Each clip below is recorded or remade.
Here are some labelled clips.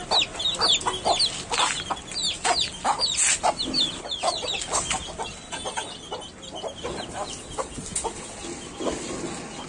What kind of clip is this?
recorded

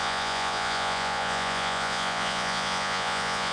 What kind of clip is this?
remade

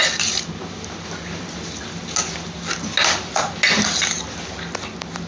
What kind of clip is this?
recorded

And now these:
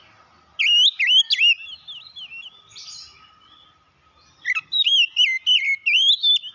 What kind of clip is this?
recorded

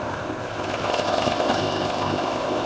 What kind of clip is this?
remade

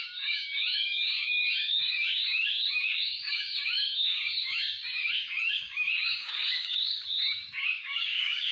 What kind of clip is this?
remade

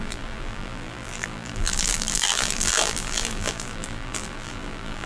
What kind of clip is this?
remade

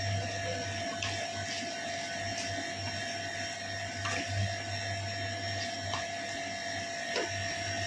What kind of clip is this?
recorded